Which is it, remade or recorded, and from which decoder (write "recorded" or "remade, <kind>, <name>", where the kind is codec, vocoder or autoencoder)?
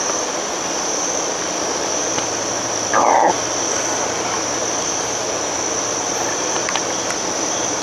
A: recorded